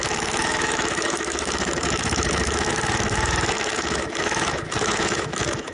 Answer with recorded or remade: remade